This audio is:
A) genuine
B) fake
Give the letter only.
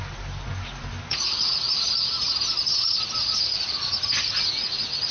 A